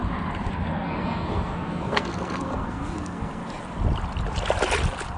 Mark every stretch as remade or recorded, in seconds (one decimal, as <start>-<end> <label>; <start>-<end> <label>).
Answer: 0.0-0.5 recorded; 0.5-3.4 remade; 3.4-5.2 recorded